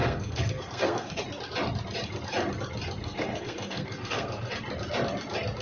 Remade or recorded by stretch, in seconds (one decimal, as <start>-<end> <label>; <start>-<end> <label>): 0.0-1.2 remade; 1.2-3.0 recorded; 3.0-4.5 remade; 4.5-5.6 recorded